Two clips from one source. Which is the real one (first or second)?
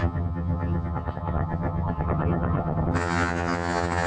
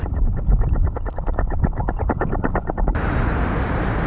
second